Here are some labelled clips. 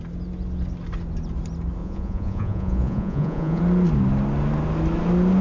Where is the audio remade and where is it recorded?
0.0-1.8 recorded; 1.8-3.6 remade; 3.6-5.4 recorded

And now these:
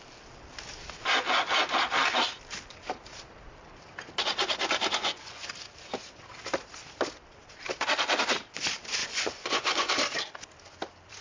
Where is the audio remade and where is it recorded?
0.0-5.0 recorded; 5.0-5.5 remade; 5.5-9.0 recorded; 9.0-9.9 remade; 9.9-11.2 recorded

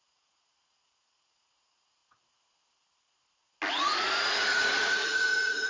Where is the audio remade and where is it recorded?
0.0-2.0 remade; 2.0-3.7 recorded; 3.7-5.7 remade

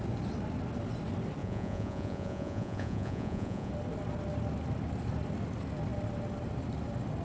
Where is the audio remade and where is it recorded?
0.0-1.4 recorded; 1.4-3.7 remade; 3.7-7.2 recorded

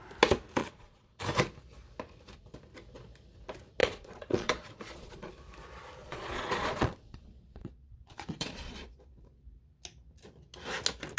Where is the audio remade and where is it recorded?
0.0-0.6 recorded; 0.6-1.2 remade; 1.2-3.8 recorded; 3.8-5.3 remade; 5.3-6.0 recorded; 6.0-9.6 remade; 9.6-11.2 recorded

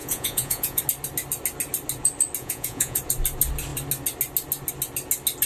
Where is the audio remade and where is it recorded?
0.0-0.8 remade; 0.8-2.4 recorded; 2.4-3.0 remade; 3.0-5.5 recorded

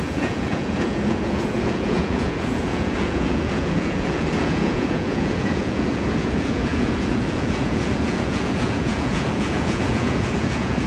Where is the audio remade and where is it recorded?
0.0-10.9 remade

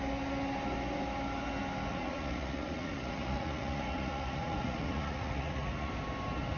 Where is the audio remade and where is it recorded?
0.0-1.9 recorded; 1.9-5.9 remade; 5.9-6.6 recorded